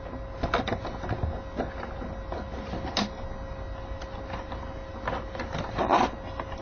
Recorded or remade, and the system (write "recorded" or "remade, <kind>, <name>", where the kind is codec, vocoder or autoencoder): recorded